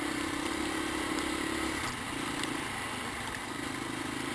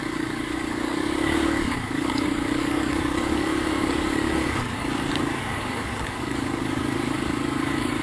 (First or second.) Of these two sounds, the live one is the first